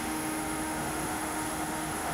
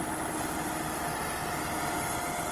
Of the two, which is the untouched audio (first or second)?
second